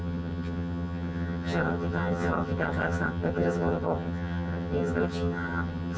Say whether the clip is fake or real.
fake